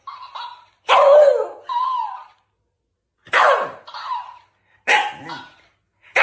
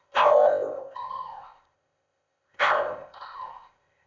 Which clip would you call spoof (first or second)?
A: second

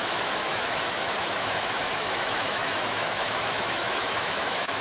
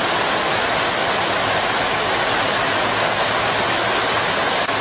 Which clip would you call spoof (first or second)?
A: first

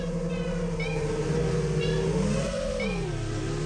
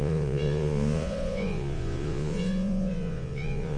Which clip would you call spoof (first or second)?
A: second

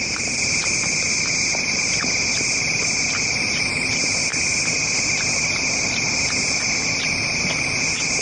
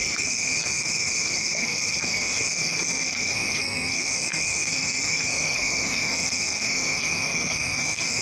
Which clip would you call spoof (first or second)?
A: second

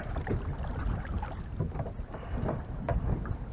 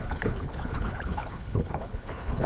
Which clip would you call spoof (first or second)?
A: second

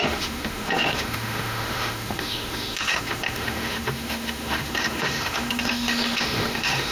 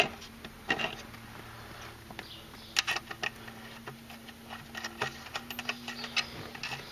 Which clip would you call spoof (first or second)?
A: first